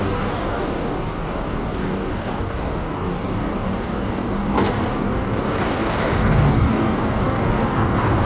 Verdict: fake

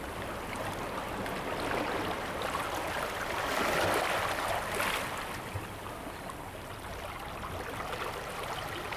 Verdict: real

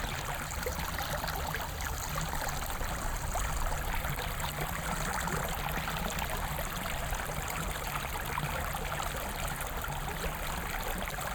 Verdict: real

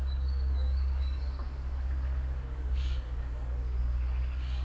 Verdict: fake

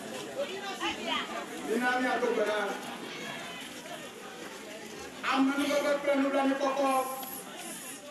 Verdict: real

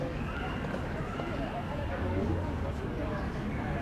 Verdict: fake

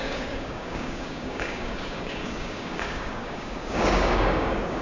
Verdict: fake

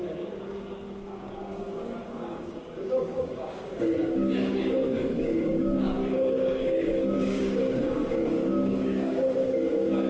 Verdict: fake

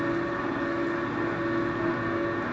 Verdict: real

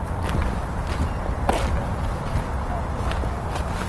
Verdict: real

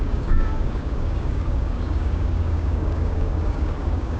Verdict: fake